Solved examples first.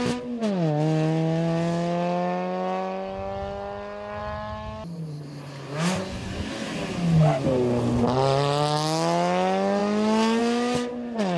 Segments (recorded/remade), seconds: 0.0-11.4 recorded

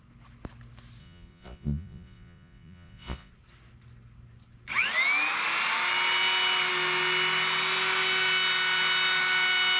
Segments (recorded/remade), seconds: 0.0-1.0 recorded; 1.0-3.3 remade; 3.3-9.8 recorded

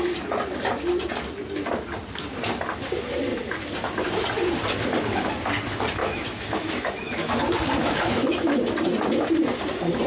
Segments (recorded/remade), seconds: 0.0-6.0 recorded; 6.0-7.3 remade; 7.3-7.8 recorded; 7.8-8.6 remade; 8.6-10.1 recorded

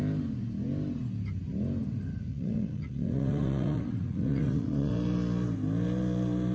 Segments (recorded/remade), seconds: 0.0-2.3 recorded; 2.3-4.9 remade; 4.9-6.5 recorded

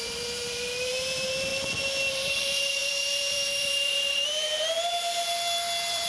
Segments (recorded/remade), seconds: 0.0-1.5 remade; 1.5-2.1 recorded; 2.1-6.1 remade